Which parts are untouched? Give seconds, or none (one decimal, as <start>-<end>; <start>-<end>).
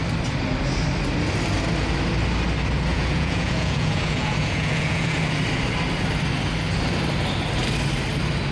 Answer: 0.0-2.9; 5.2-8.5